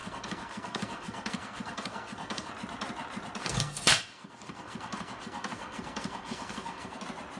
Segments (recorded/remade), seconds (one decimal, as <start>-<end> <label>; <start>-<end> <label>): 0.0-2.5 remade; 2.5-3.4 recorded; 3.4-7.0 remade; 7.0-7.4 recorded